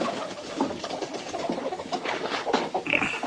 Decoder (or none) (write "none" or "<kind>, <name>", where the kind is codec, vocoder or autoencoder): codec, DAC